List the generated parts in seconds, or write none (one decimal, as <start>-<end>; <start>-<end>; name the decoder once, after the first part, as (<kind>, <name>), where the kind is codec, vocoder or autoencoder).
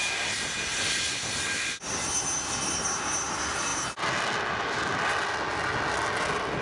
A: none